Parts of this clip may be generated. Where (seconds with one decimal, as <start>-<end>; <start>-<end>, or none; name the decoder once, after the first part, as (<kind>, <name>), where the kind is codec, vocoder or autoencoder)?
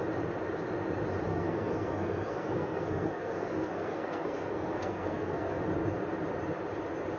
1.3-5.6 (codec, SNAC)